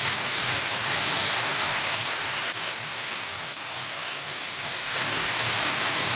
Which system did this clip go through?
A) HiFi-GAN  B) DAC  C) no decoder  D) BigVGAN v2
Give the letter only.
B